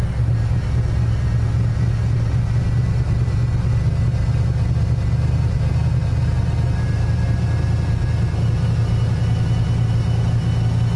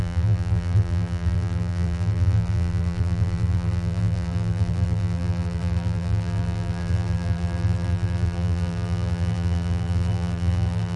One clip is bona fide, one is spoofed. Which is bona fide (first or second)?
first